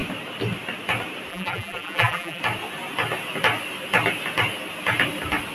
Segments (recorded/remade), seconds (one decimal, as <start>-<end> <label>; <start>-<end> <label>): 0.0-1.3 recorded; 1.3-2.4 remade; 2.4-5.5 recorded